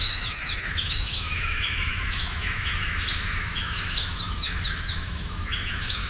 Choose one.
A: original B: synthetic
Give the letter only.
B